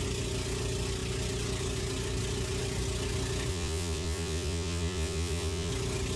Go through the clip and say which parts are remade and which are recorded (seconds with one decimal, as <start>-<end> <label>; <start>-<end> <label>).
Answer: 0.0-3.5 recorded; 3.5-5.7 remade; 5.7-6.2 recorded